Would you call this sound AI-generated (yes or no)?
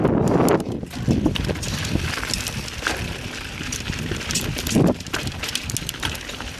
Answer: no